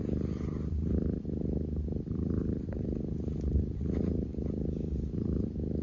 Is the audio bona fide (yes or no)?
yes